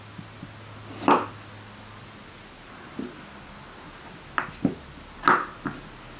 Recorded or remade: recorded